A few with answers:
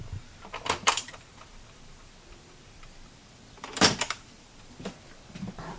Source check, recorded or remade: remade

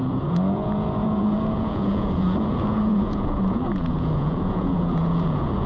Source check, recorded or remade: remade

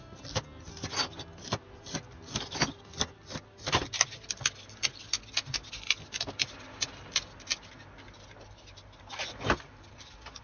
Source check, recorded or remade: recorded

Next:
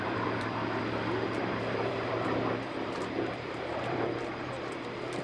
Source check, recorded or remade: remade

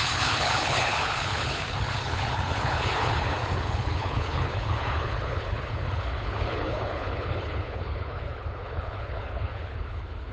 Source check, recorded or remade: remade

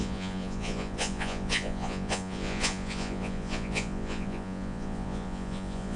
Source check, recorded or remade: remade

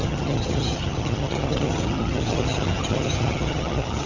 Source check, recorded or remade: remade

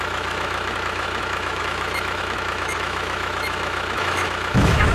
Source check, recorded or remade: remade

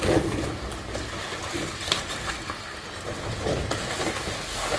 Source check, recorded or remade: recorded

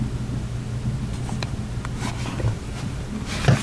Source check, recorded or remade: recorded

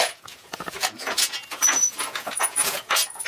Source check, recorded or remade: remade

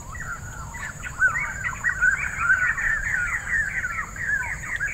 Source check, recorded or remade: remade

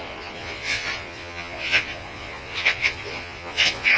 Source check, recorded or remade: remade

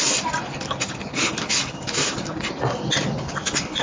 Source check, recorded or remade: recorded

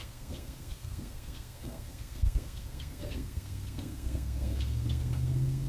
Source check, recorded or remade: remade